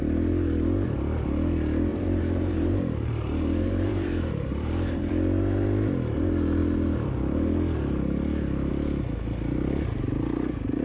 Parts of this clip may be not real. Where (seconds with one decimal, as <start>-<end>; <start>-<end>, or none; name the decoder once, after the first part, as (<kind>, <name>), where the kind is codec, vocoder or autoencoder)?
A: 1.9-5.1 (vocoder, BigVGAN v2)